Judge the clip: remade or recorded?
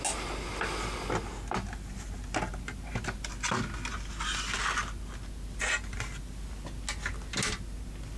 recorded